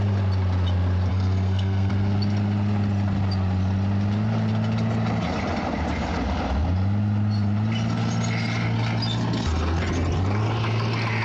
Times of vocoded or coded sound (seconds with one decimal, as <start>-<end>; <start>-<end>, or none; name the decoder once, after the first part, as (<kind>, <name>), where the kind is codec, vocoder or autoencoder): 1.1-1.9 (codec, SNAC)